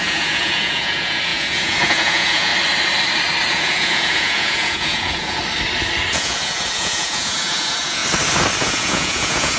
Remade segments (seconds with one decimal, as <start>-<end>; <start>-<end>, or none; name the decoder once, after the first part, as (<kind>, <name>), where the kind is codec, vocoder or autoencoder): 0.0-2.5 (vocoder, Vocos); 3.5-5.4; 6.1-8.0; 8.6-9.6